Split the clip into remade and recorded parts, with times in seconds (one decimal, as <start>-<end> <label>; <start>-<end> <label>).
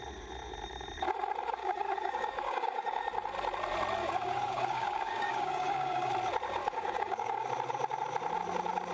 0.0-1.6 recorded; 1.6-3.0 remade; 3.0-4.0 recorded; 4.0-6.1 remade; 6.1-6.6 recorded; 6.6-7.5 remade; 7.5-8.9 recorded